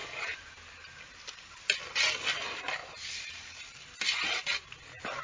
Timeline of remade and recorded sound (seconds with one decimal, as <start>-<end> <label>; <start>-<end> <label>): 0.0-5.2 recorded